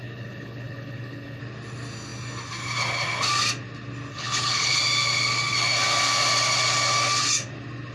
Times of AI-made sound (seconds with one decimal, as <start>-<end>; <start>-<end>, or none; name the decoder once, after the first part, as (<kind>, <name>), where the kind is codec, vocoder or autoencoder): 0.0-1.4 (codec, HILCodec); 4.1-4.8